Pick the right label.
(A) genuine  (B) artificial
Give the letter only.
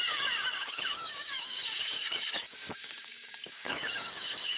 B